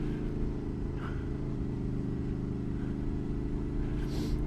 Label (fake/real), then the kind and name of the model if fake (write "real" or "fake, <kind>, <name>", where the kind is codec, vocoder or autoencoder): real